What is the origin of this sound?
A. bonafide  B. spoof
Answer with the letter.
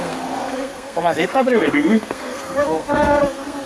B